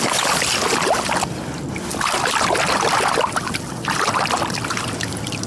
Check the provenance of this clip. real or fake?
real